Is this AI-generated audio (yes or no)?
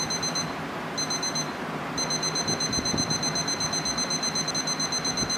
no